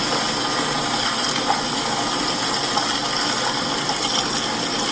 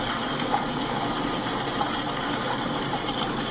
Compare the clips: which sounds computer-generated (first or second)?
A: second